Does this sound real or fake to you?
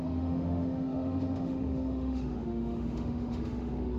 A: fake